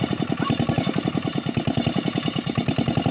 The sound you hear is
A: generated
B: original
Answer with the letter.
B